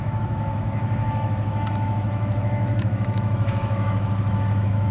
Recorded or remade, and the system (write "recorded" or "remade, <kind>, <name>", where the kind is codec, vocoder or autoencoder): remade, autoencoder, DAC-VAE